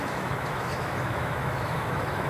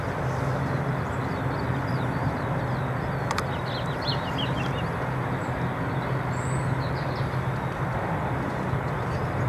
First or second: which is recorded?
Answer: second